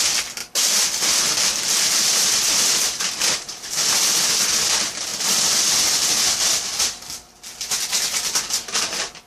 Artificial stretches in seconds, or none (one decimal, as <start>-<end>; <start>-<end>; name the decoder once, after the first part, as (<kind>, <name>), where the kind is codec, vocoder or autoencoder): none